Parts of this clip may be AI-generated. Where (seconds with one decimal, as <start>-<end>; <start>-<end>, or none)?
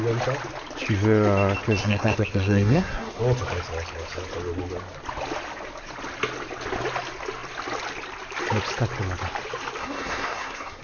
1.8-3.2; 9.8-10.8